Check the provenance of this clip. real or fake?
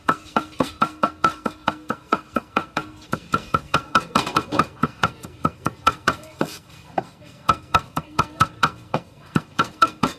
fake